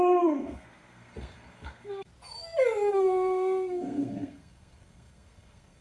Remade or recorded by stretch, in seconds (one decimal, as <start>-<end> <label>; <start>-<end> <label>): 0.0-2.1 remade; 2.1-2.9 recorded; 2.9-5.8 remade